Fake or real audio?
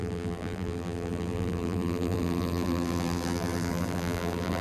fake